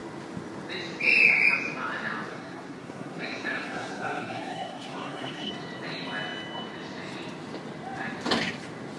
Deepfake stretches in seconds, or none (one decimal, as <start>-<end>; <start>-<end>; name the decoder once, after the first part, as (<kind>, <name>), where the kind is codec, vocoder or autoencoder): 2.3-5.5 (codec, SNAC)